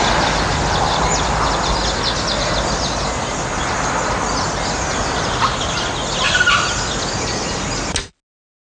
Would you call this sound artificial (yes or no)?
no